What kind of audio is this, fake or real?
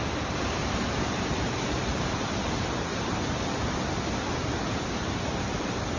real